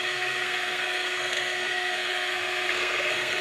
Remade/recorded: remade